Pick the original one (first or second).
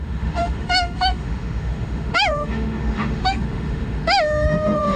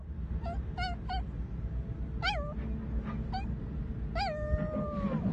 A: second